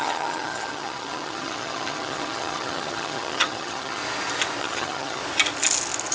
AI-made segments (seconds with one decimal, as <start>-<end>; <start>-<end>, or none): 0.0-4.0; 4.6-5.2